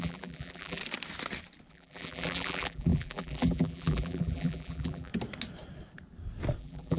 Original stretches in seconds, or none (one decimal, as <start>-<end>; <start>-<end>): 0.8-1.7; 5.1-6.6